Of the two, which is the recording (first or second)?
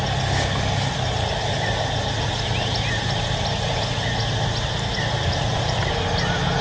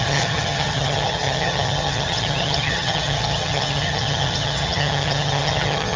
first